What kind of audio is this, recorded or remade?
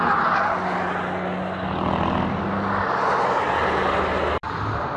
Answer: recorded